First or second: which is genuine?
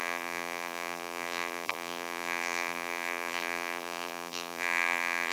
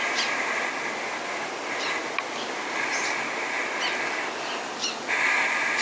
second